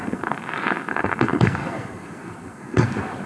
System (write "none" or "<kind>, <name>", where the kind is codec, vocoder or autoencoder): codec, SNAC